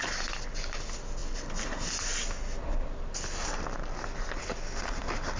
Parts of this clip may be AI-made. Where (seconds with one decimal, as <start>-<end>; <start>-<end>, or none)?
none